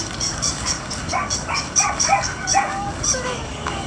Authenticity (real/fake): fake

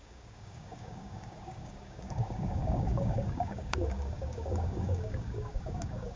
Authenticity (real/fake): fake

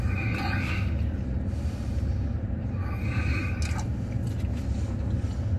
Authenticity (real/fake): real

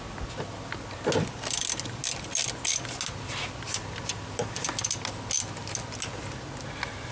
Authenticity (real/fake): real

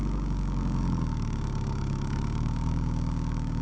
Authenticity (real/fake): fake